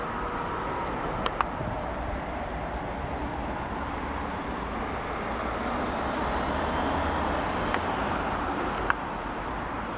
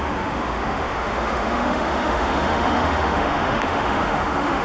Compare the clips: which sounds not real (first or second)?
second